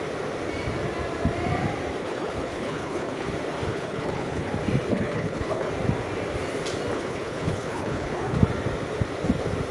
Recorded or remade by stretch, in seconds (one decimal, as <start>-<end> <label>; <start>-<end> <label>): 0.0-2.0 recorded; 2.0-3.3 remade; 3.3-3.7 recorded; 3.7-4.5 remade; 4.5-4.9 recorded; 4.9-5.7 remade; 5.7-6.9 recorded; 6.9-8.4 remade; 8.4-9.7 recorded